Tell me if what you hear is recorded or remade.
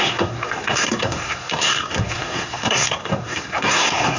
remade